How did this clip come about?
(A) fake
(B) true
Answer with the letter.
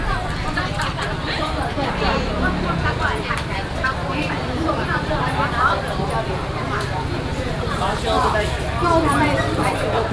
A